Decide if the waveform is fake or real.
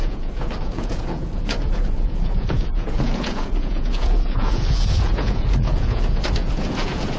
fake